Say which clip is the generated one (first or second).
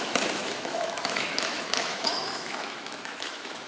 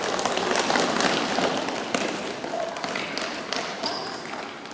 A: first